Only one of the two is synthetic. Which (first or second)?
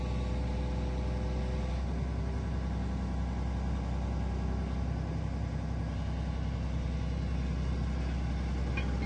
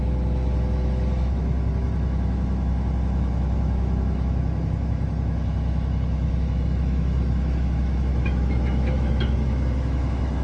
second